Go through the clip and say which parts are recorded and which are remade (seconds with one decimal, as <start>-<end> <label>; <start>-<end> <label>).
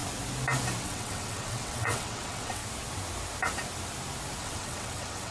0.0-0.8 recorded; 0.8-2.6 remade; 2.6-4.4 recorded; 4.4-5.3 remade